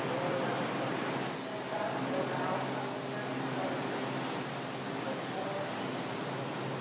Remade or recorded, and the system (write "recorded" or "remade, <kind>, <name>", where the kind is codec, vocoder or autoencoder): recorded